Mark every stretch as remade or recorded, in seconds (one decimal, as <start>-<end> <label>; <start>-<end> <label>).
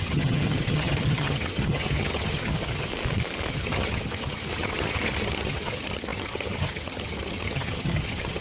0.0-2.9 remade; 2.9-3.5 recorded; 3.5-8.4 remade